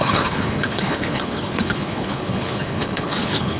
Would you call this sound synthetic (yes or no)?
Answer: yes